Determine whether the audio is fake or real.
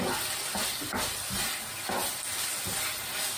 real